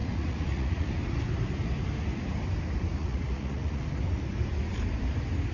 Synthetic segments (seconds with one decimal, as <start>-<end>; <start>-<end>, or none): 0.0-0.9; 3.0-3.8